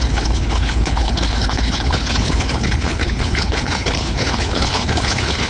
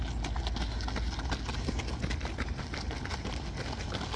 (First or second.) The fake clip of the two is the first